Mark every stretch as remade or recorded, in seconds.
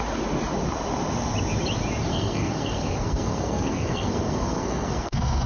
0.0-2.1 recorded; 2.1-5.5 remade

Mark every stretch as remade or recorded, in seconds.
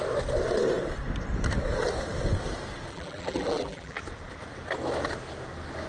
0.0-2.9 recorded; 2.9-4.0 remade; 4.0-5.9 recorded